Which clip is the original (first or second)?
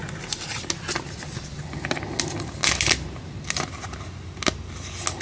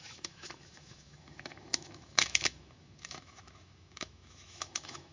first